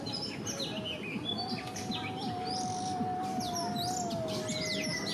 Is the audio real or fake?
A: real